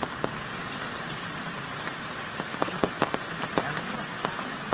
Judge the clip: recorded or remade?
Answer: recorded